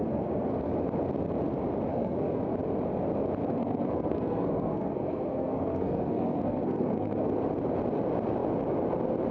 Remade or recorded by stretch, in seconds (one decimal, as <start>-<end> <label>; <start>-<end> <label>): 0.0-0.7 remade; 0.7-1.9 recorded; 1.9-2.4 remade; 2.4-3.4 recorded; 3.4-7.4 remade; 7.4-9.3 recorded